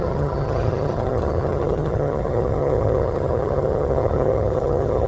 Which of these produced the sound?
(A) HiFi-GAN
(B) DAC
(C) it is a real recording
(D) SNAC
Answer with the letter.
A